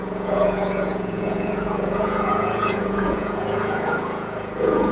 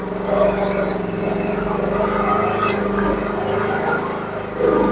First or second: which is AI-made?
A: first